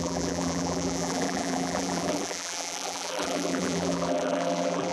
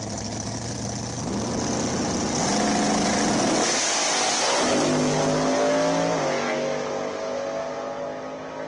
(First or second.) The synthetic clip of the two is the first